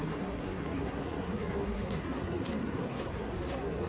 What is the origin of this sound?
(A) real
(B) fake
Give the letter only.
B